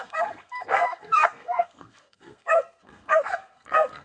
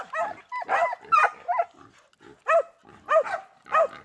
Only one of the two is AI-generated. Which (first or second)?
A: first